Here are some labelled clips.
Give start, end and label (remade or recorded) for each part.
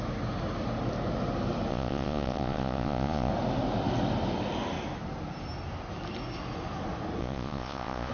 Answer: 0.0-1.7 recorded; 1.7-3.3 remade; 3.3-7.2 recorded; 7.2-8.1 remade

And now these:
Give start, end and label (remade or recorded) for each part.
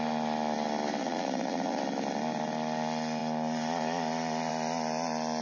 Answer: 0.0-1.0 recorded; 1.0-1.8 remade; 1.8-5.4 recorded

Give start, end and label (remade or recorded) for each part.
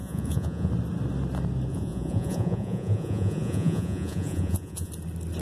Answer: 0.0-0.7 remade; 0.7-1.7 recorded; 1.7-4.9 remade; 4.9-5.4 recorded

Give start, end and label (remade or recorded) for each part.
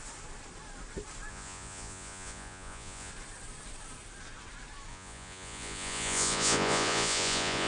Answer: 0.0-1.3 recorded; 1.3-3.1 remade; 3.1-4.9 recorded; 4.9-7.7 remade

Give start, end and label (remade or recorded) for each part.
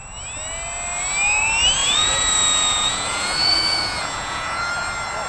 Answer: 0.0-1.8 recorded; 1.8-4.7 remade; 4.7-5.3 recorded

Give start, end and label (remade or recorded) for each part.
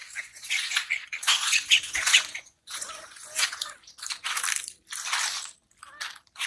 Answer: 0.0-3.9 remade; 3.9-6.5 recorded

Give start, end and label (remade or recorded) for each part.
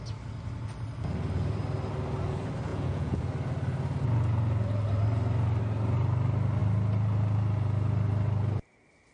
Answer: 0.0-2.7 recorded; 2.7-3.2 remade; 3.2-9.1 recorded